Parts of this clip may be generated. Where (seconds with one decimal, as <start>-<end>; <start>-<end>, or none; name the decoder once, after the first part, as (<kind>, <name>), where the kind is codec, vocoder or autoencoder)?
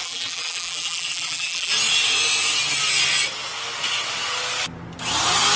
0.0-1.7 (vocoder, BigVGAN v2)